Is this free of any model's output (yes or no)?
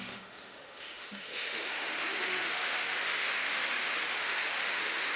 no